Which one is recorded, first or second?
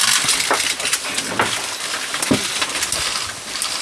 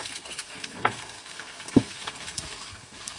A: first